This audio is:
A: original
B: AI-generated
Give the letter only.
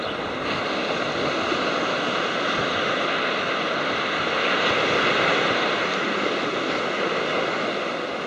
A